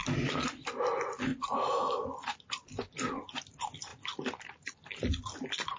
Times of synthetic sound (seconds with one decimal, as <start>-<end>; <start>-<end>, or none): 1.3-2.9; 3.9-4.7